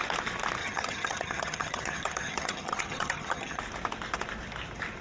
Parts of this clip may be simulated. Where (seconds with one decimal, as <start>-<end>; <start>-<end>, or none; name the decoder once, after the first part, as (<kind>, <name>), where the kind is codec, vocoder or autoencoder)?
0.6-3.6 (vocoder, HiFi-GAN)